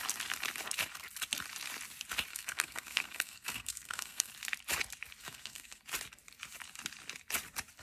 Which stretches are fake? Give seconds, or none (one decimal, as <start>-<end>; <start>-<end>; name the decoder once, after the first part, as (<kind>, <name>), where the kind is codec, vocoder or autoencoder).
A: 2.3-4.3 (codec, SNAC); 5.2-5.8